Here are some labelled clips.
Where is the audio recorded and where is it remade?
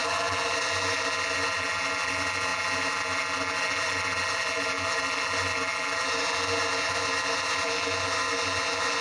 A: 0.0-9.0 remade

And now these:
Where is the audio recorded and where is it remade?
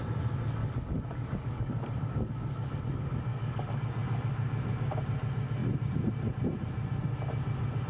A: 0.0-0.6 recorded; 0.6-2.8 remade; 2.8-3.3 recorded; 3.3-3.8 remade; 3.8-7.9 recorded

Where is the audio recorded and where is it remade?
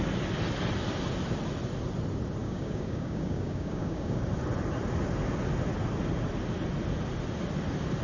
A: 0.0-2.4 recorded; 2.4-4.2 remade; 4.2-8.0 recorded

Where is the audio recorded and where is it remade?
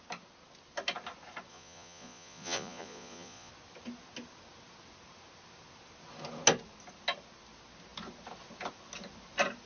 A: 0.0-1.5 recorded; 1.5-3.5 remade; 3.5-9.7 recorded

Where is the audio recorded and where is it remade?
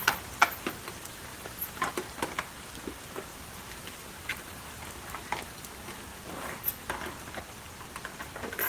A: 0.0-1.3 recorded; 1.3-1.9 remade; 1.9-3.3 recorded; 3.3-5.1 remade; 5.1-8.7 recorded